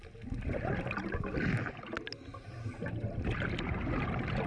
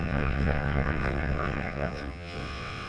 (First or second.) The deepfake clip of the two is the second